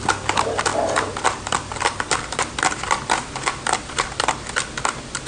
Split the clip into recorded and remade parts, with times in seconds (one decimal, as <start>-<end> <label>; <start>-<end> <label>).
0.0-5.3 recorded